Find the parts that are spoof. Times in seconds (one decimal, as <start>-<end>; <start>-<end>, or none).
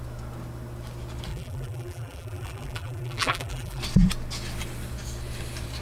1.3-3.8